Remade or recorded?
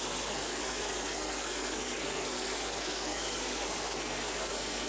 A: remade